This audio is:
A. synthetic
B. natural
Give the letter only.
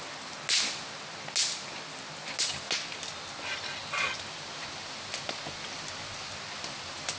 B